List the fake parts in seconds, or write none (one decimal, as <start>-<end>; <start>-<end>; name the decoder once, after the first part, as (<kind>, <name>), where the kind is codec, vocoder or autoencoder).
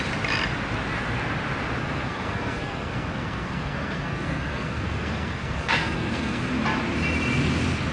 1.8-6.4 (codec, SNAC)